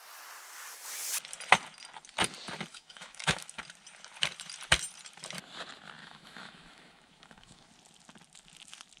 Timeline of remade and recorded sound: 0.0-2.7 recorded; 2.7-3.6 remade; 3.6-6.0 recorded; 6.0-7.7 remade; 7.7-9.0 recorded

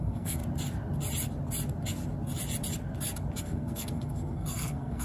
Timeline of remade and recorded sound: 0.0-0.4 remade; 0.4-3.4 recorded; 3.4-5.0 remade

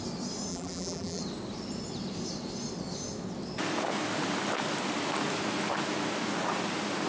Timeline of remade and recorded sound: 0.0-0.5 recorded; 0.5-1.2 remade; 1.2-7.1 recorded

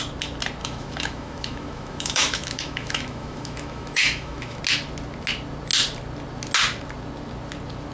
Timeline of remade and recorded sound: 0.0-0.6 recorded; 0.6-4.6 remade; 4.6-7.9 recorded

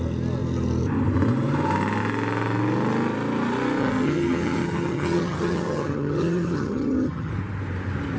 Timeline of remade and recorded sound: 0.0-3.8 recorded; 3.8-7.3 remade; 7.3-8.2 recorded

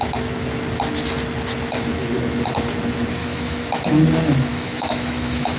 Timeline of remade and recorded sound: 0.0-3.2 recorded; 3.2-3.7 remade; 3.7-4.5 recorded; 4.5-5.6 remade

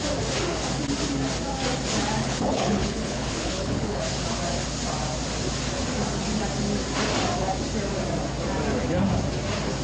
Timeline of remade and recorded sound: 0.0-2.2 recorded; 2.2-4.0 remade; 4.0-9.8 recorded